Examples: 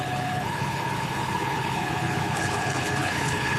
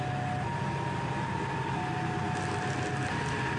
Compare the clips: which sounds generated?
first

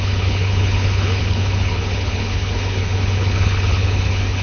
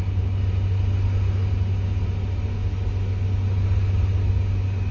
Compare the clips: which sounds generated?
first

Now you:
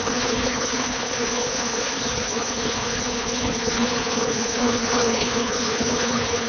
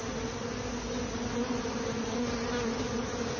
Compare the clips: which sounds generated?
first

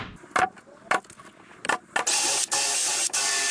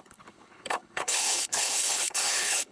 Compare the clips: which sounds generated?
second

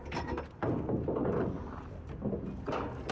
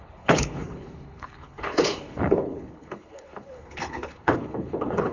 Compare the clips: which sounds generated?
second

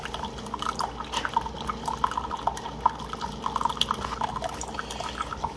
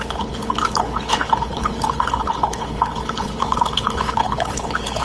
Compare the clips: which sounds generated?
second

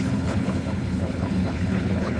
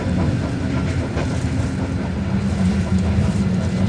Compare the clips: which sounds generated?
first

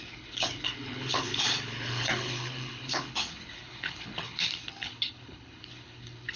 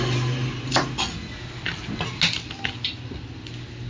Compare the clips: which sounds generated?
first